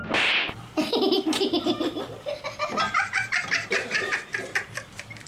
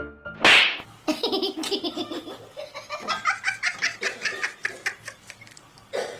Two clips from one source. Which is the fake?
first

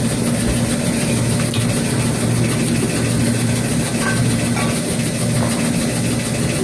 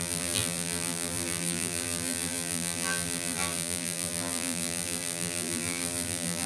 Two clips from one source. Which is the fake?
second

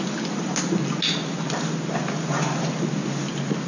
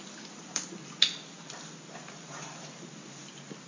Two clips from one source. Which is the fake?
second